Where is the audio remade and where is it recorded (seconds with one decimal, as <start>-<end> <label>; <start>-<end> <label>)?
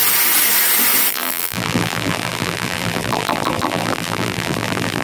0.0-1.1 recorded; 1.1-5.0 remade